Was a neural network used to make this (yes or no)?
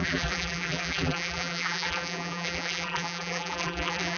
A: yes